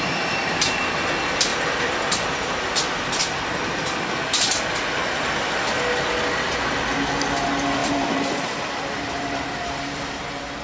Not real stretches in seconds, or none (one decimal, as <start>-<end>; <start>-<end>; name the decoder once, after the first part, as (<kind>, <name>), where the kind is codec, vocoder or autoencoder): 7.8-10.2 (vocoder, BigVGAN v2)